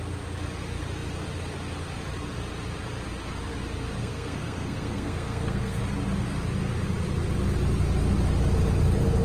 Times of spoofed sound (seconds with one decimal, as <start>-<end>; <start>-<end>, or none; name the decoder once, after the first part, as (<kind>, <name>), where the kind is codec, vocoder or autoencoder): 4.0-5.8 (codec, SNAC)